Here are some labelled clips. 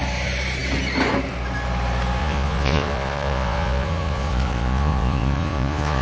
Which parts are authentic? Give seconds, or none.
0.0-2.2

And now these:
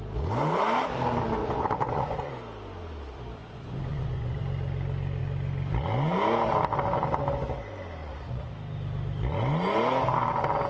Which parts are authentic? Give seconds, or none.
0.0-1.4; 2.3-3.4; 4.4-8.0; 8.5-10.7